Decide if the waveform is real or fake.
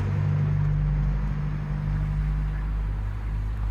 real